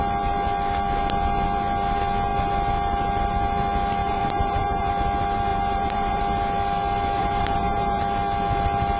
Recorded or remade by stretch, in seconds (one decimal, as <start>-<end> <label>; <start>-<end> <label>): 0.0-4.0 recorded; 4.0-4.9 remade; 4.9-5.5 recorded; 5.5-6.2 remade; 6.2-7.2 recorded; 7.2-8.0 remade; 8.0-9.0 recorded